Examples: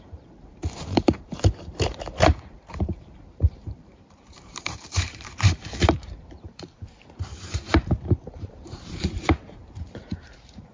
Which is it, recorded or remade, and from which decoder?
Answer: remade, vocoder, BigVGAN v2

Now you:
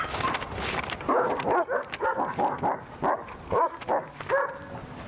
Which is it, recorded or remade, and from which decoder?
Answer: recorded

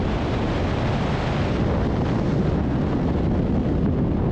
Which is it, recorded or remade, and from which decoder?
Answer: recorded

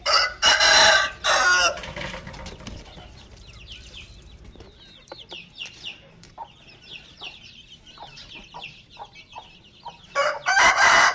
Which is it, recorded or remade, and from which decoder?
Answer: remade, vocoder, BigVGAN v2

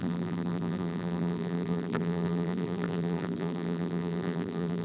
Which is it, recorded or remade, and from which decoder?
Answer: remade, vocoder, BigVGAN v2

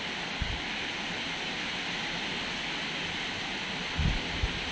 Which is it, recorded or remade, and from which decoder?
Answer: recorded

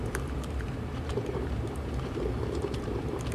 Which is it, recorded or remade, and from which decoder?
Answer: remade, vocoder, BigVGAN v2